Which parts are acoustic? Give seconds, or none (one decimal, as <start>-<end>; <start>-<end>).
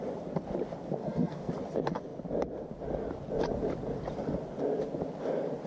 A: 0.0-1.0; 1.5-5.7